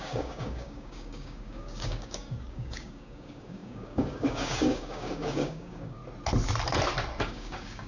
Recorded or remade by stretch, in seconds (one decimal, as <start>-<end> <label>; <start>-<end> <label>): 0.0-6.0 remade; 6.0-7.2 recorded; 7.2-7.9 remade